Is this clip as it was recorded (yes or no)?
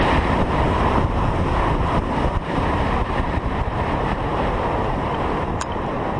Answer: no